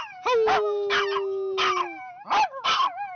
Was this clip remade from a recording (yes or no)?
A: no